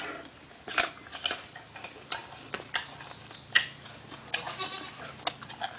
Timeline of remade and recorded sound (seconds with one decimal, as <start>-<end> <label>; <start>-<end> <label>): 0.0-5.8 recorded